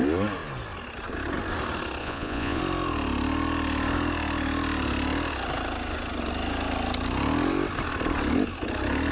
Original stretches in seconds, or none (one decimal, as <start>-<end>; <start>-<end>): 0.0-2.0; 2.6-9.1